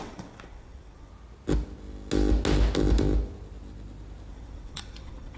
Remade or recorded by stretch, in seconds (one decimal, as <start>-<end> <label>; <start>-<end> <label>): 0.0-1.1 remade; 1.1-4.3 recorded; 4.3-5.4 remade